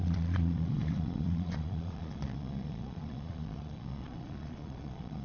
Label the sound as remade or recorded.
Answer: remade